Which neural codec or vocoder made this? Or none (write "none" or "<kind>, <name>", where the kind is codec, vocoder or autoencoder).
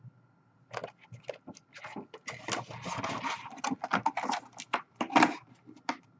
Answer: none